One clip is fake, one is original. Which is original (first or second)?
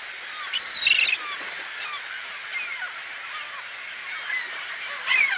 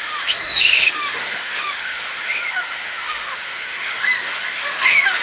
first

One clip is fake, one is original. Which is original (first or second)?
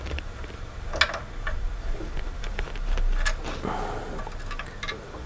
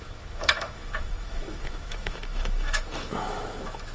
first